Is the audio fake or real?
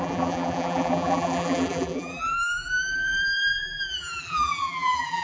fake